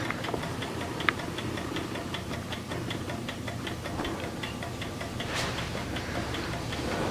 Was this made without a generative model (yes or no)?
no